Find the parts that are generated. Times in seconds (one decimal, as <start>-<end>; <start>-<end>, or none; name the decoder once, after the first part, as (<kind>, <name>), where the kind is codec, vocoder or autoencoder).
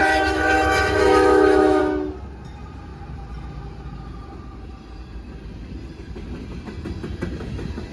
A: 0.0-1.8 (autoencoder, DAC-VAE)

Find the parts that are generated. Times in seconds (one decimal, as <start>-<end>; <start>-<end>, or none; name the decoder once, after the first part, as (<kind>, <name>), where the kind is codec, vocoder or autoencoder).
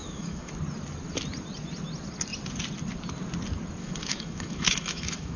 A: 0.0-0.5 (autoencoder, DAC-VAE); 3.8-5.4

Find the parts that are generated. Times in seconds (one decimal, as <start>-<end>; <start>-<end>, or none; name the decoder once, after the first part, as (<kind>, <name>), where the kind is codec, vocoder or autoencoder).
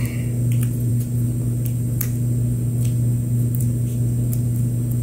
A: none